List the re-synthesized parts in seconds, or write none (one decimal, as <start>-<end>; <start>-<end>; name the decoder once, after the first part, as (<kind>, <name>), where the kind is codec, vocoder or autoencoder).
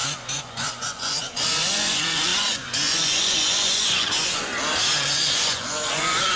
0.0-4.5 (vocoder, Vocos); 5.1-6.4